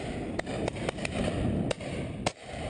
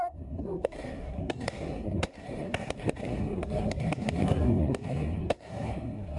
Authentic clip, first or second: first